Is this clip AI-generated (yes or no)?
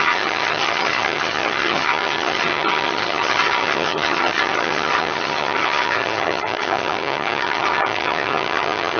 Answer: yes